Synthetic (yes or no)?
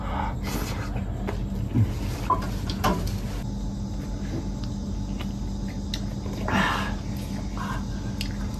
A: no